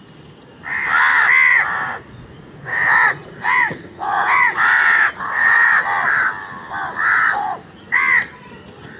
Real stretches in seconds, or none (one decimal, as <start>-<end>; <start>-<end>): 0.0-1.5; 5.7-7.0; 8.0-9.0